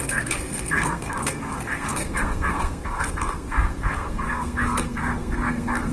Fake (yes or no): yes